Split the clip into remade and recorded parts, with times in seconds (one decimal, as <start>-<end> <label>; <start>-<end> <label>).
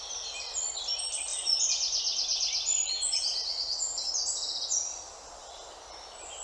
0.0-6.4 recorded